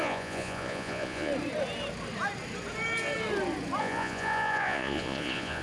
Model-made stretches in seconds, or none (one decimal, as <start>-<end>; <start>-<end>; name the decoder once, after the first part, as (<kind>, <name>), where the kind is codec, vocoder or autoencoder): 0.0-1.3 (vocoder, Vocos); 3.8-5.6